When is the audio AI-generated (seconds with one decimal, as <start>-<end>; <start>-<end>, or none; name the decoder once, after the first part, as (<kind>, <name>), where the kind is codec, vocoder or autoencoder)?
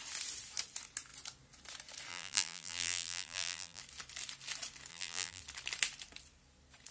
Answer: 2.1-3.8 (vocoder, BigVGAN v2); 4.9-5.4